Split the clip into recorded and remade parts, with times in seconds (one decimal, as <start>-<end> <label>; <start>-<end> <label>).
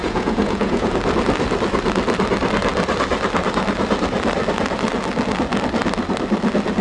0.0-0.9 remade; 0.9-6.8 recorded